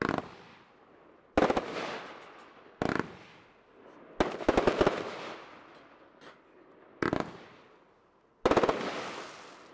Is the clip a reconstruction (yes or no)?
no